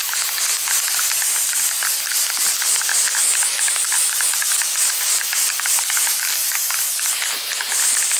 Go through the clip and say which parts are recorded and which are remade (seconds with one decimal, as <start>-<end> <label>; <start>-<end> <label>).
0.0-8.2 recorded